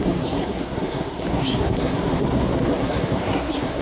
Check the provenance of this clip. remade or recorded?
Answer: remade